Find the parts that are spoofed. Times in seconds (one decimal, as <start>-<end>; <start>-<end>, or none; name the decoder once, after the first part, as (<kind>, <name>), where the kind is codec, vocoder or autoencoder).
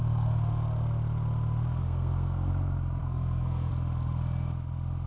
1.8-2.5 (codec, SNAC); 3.0-3.7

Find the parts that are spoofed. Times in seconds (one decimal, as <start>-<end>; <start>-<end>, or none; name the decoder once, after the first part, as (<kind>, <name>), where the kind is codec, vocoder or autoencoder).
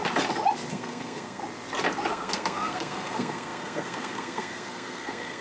0.7-1.4 (codec, SNAC); 2.1-5.4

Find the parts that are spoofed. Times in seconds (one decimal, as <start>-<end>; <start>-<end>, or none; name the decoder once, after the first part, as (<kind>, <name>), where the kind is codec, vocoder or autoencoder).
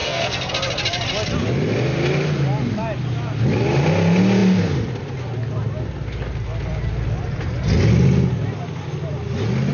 0.0-0.5 (codec, SNAC)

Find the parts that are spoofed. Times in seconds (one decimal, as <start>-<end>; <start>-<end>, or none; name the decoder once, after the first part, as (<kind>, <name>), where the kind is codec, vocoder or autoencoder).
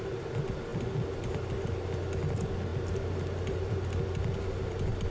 none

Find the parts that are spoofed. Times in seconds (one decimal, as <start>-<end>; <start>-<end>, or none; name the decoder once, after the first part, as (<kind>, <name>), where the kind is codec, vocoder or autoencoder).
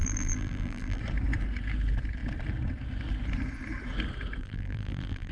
0.0-1.0 (vocoder, BigVGAN v2); 4.4-5.3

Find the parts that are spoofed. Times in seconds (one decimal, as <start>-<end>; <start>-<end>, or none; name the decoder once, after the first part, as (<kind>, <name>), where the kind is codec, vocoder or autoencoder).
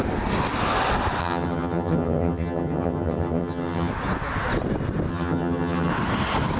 1.2-3.9 (vocoder, HiFi-GAN); 5.1-5.9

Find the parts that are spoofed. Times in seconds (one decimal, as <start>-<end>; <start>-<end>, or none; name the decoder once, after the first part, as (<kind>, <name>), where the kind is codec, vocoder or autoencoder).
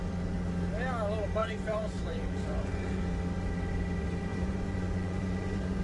1.4-3.0 (vocoder, Vocos); 4.3-5.8